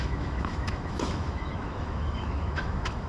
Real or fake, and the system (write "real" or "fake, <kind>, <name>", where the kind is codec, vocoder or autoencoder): fake, autoencoder, DAC-VAE